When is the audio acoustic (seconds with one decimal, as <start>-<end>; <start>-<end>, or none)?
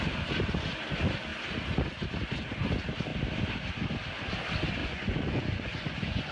0.0-4.8